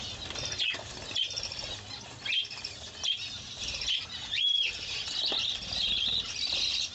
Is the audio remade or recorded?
recorded